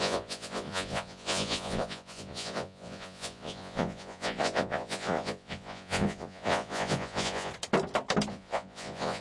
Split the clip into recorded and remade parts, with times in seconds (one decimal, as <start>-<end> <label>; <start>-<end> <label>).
0.0-7.5 remade; 7.5-8.3 recorded; 8.3-9.2 remade